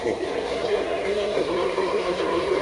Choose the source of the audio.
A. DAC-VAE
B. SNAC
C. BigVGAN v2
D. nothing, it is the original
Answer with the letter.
B